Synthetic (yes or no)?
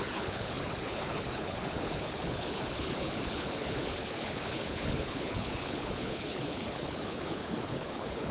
yes